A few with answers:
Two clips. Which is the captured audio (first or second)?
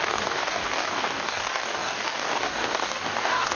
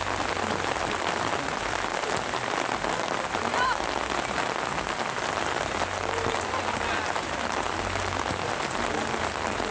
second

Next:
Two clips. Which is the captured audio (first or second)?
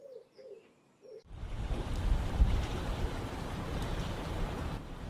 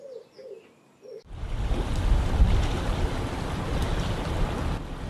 second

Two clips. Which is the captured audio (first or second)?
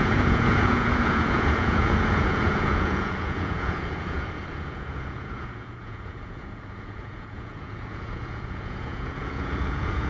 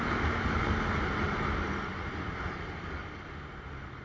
second